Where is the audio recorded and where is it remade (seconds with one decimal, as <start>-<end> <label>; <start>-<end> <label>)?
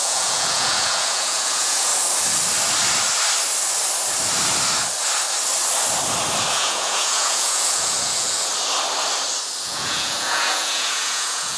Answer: 0.0-1.9 remade; 1.9-6.5 recorded; 6.5-8.5 remade; 8.5-9.6 recorded; 9.6-11.6 remade